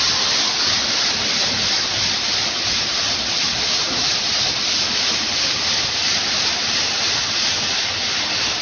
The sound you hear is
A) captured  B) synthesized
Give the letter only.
B